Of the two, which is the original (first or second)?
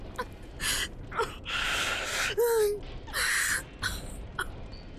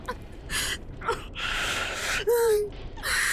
first